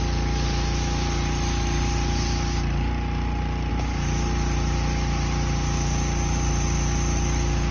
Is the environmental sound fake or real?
real